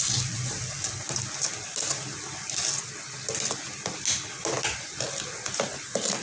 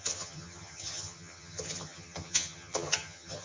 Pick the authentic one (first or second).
first